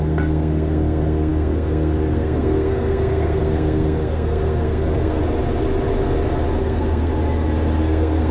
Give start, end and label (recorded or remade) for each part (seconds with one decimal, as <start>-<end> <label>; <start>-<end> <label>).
0.0-5.2 remade; 5.2-6.6 recorded; 6.6-7.1 remade; 7.1-7.8 recorded; 7.8-8.3 remade

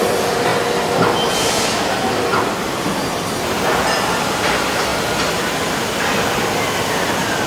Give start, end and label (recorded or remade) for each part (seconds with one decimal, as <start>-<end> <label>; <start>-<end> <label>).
0.0-0.5 remade; 0.5-2.6 recorded; 2.6-4.9 remade; 4.9-6.0 recorded; 6.0-7.5 remade

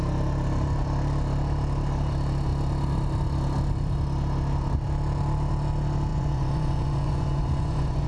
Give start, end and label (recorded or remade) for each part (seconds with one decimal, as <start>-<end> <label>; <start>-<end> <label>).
0.0-6.1 recorded; 6.1-8.1 remade